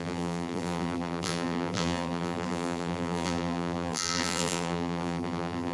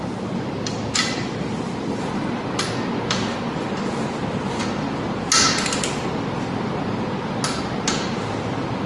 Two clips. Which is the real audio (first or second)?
second